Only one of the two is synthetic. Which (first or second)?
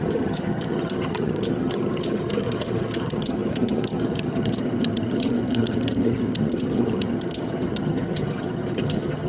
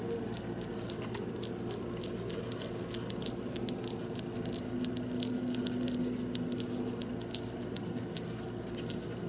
first